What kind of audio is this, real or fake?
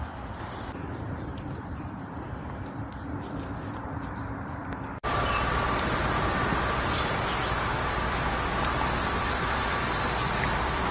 fake